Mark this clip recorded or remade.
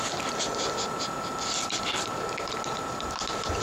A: recorded